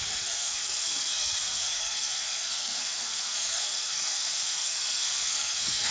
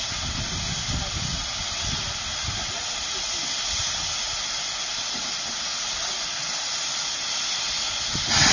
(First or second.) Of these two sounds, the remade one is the first